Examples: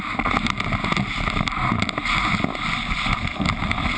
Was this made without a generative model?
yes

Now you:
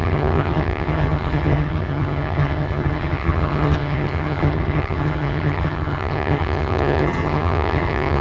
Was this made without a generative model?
no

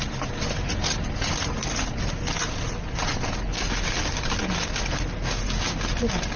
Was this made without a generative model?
yes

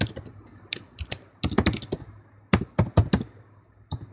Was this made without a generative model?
yes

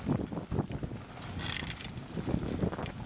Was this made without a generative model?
yes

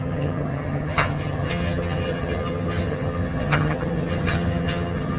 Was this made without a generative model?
no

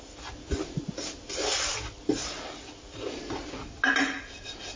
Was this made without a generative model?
yes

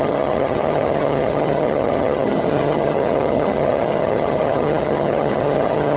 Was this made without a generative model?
no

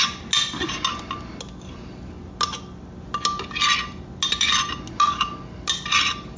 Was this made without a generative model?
yes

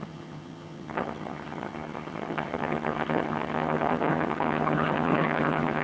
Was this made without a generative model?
no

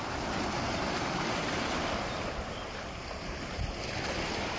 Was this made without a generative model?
yes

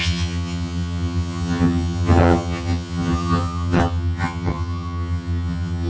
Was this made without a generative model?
no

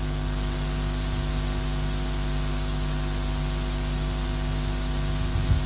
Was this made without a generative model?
yes